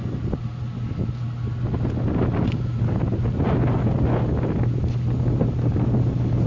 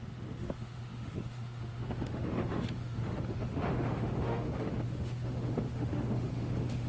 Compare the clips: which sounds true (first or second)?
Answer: first